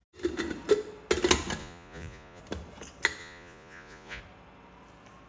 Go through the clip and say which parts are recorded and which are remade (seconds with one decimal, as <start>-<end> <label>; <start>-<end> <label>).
0.0-1.6 recorded; 1.6-2.4 remade; 2.4-3.2 recorded; 3.2-4.2 remade; 4.2-5.3 recorded